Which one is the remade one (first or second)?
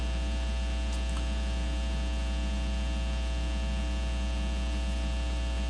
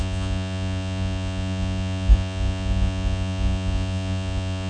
second